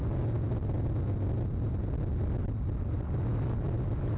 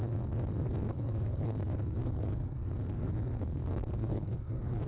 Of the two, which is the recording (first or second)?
first